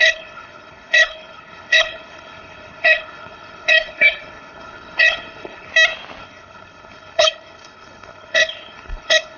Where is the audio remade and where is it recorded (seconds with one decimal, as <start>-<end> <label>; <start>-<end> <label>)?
0.0-5.7 remade; 5.7-6.2 recorded; 6.2-9.4 remade